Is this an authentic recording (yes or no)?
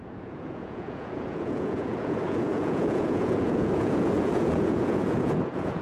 no